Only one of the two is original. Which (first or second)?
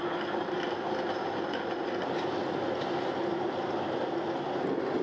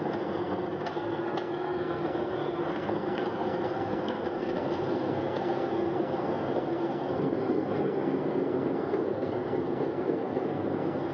first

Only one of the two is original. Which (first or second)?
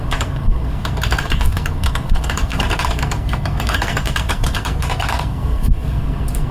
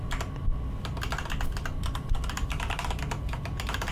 second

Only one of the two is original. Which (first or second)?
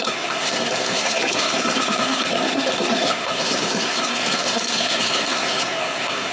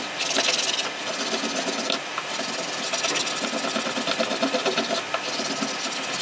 second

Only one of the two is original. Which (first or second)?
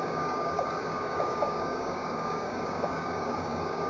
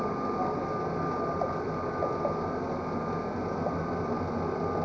second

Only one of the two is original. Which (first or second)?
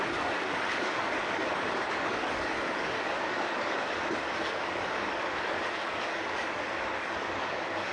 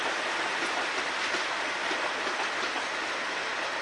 second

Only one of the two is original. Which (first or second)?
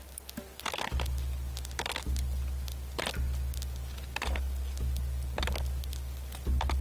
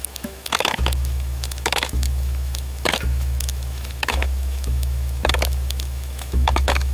first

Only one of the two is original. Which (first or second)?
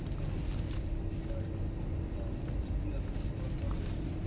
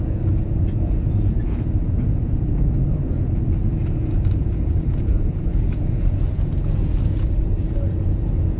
first